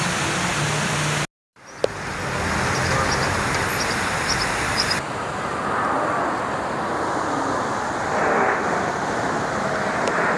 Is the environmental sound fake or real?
real